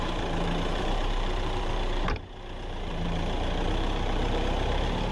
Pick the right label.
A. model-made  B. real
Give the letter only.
A